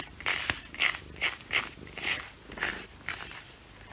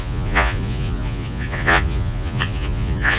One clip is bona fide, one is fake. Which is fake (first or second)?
second